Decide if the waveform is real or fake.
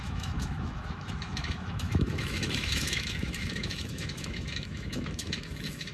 fake